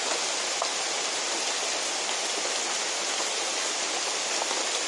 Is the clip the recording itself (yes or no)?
yes